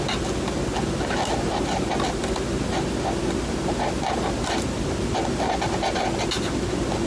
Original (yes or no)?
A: yes